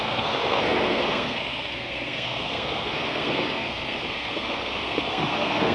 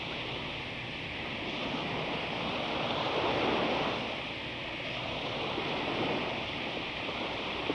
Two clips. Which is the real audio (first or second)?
second